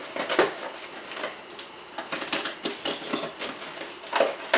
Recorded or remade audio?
recorded